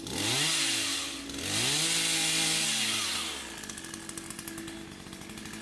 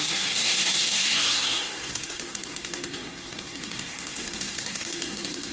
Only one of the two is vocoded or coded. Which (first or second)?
second